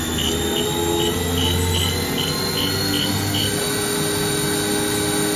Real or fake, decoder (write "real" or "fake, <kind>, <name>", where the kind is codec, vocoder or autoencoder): real